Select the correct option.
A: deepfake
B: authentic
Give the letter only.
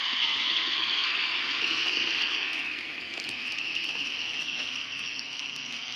A